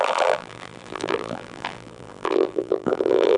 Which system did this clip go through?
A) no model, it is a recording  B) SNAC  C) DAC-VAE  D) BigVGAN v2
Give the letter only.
D